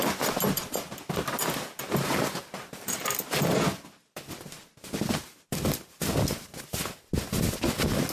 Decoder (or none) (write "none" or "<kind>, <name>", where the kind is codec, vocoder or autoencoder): none